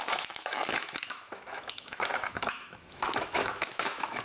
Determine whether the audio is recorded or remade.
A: remade